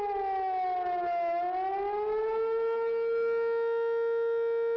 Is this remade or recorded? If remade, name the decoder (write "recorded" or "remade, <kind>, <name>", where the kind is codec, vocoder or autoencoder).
recorded